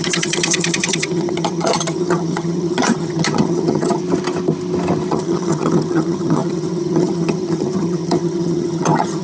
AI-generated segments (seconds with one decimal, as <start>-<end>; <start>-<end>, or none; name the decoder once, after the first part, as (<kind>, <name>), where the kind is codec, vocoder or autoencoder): 0.0-4.0 (vocoder, HiFi-GAN); 5.1-9.2